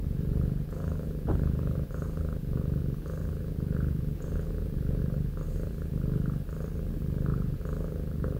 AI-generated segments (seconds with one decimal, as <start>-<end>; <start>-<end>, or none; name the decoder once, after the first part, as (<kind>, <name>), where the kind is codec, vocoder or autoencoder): 0.0-5.0 (vocoder, Vocos); 7.3-8.4